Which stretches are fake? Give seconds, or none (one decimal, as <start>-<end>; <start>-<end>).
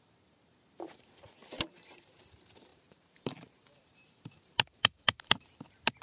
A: 1.4-2.2; 2.7-5.6